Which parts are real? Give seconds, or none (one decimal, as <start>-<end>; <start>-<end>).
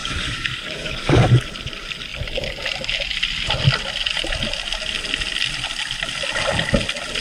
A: 1.5-7.2